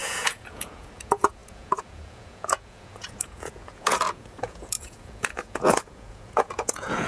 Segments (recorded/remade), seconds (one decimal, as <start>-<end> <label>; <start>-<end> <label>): 0.0-7.1 remade